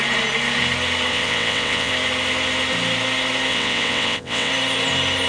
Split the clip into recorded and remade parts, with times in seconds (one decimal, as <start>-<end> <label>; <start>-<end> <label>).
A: 0.0-1.1 recorded; 1.1-1.9 remade; 1.9-3.5 recorded; 3.5-4.5 remade; 4.5-5.3 recorded